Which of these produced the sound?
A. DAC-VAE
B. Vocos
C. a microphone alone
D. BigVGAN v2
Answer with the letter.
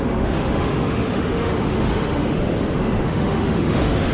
A